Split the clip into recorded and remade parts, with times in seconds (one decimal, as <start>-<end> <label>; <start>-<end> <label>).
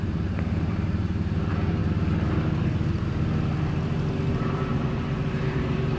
0.0-1.8 remade; 1.8-4.3 recorded; 4.3-6.0 remade